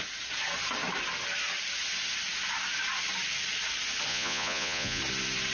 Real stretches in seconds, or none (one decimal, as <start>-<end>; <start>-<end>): 0.0-4.1; 5.0-5.5